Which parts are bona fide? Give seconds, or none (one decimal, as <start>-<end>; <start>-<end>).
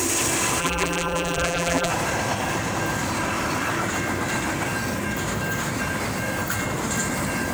0.0-0.6; 1.9-7.5